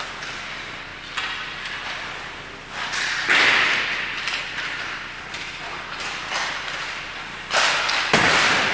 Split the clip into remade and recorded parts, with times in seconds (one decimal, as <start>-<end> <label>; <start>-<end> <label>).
0.0-8.7 recorded